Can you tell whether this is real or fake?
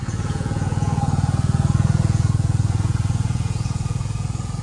fake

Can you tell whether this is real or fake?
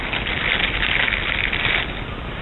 real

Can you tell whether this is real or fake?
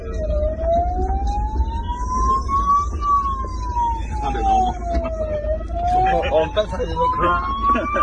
real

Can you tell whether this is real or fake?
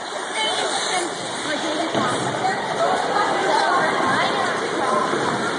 fake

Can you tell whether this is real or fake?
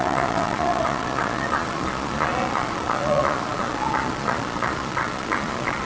fake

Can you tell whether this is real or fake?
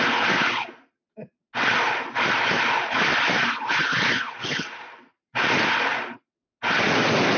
real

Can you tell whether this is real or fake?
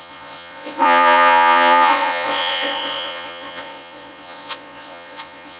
fake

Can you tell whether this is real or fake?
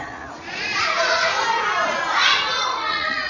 fake